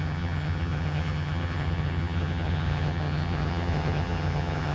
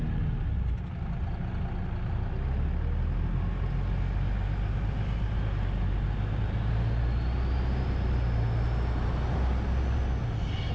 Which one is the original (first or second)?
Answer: second